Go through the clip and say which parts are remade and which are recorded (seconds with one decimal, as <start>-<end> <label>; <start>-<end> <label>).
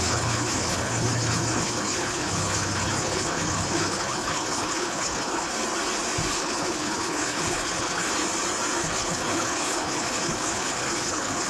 0.0-5.5 remade; 5.5-6.3 recorded; 6.3-8.1 remade; 8.1-8.8 recorded; 8.8-11.5 remade